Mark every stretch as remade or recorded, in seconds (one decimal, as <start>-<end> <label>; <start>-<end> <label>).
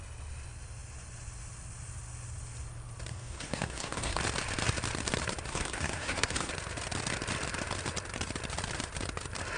0.0-3.1 recorded; 3.1-4.2 remade; 4.2-5.5 recorded; 5.5-6.5 remade; 6.5-9.6 recorded